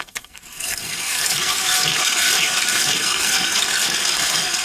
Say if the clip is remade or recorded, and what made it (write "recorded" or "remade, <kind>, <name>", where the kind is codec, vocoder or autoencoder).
remade, codec, SNAC